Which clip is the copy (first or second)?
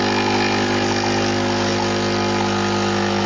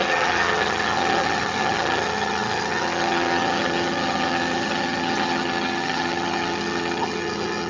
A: second